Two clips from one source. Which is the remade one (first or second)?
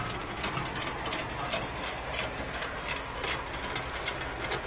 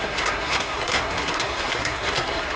second